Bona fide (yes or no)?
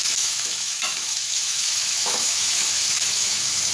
no